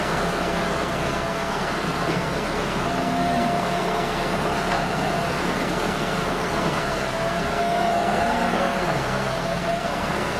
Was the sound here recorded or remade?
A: remade